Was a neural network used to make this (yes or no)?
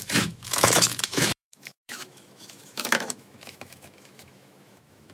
yes